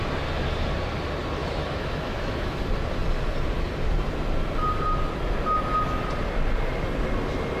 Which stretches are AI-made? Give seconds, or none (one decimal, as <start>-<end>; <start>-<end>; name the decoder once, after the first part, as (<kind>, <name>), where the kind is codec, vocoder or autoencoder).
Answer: 1.4-2.6 (autoencoder, DAC-VAE)